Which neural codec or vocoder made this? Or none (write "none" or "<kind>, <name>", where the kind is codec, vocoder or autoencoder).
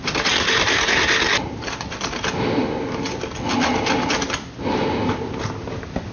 none